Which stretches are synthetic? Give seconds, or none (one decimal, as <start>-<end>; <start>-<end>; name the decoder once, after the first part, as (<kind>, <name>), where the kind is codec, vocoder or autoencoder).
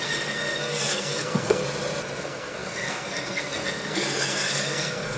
0.0-1.6 (codec, SNAC); 2.2-5.2